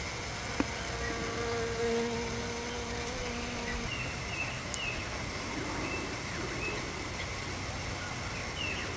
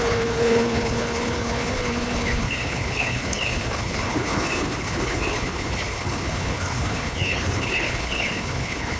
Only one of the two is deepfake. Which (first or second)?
second